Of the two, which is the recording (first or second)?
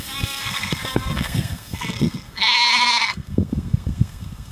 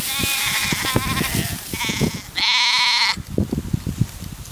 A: second